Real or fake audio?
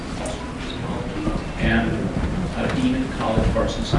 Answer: real